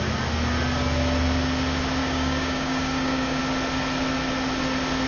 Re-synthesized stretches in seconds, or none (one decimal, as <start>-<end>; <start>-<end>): 2.0-3.4